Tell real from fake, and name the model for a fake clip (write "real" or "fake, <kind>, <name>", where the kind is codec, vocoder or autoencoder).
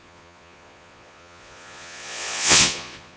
fake, vocoder, Vocos